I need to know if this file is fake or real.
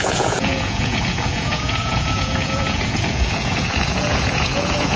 fake